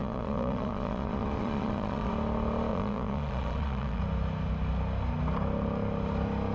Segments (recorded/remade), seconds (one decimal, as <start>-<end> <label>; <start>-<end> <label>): 0.0-2.1 remade; 2.1-2.7 recorded; 2.7-4.0 remade; 4.0-6.5 recorded